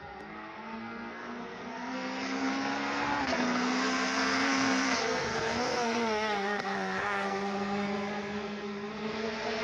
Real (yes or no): no